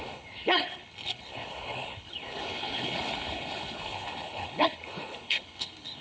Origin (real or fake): fake